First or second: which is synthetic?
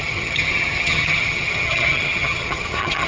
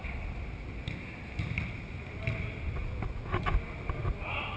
first